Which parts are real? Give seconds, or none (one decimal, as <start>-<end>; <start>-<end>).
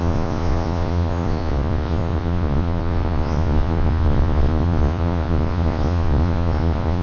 none